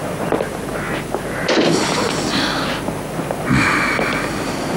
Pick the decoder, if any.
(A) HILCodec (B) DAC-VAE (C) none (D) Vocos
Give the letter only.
C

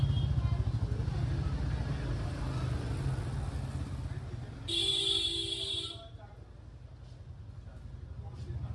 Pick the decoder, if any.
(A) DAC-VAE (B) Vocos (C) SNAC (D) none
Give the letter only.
D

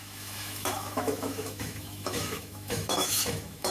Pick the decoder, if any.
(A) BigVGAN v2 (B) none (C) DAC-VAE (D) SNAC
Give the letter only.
C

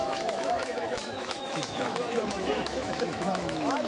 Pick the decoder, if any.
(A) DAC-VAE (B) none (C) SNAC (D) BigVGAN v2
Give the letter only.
A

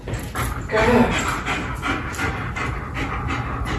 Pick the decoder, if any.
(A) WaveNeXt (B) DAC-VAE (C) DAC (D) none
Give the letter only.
D